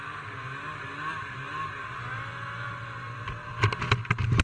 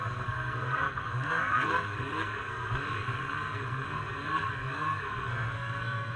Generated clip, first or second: second